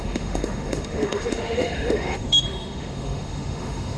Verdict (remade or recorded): remade